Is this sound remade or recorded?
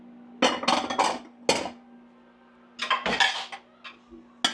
recorded